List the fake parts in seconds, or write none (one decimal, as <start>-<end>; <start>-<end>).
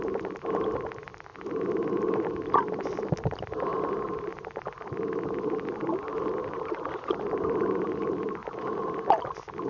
0.0-8.4